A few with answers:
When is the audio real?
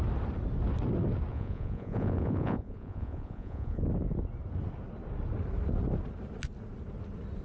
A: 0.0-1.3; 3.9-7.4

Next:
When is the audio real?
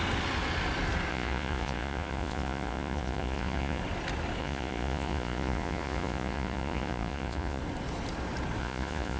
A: 0.0-1.1; 3.8-4.4; 7.6-8.6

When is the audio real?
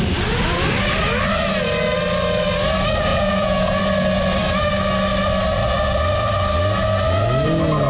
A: 0.0-3.1; 3.8-7.9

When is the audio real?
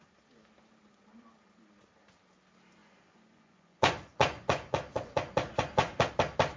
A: 0.0-2.8; 6.1-6.6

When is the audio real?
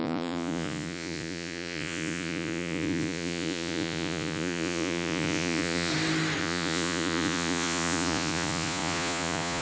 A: 5.9-6.4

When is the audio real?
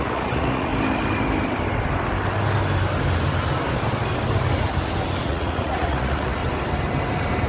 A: 0.7-5.2; 6.4-7.5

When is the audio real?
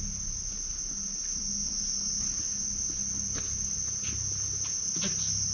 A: 0.0-5.5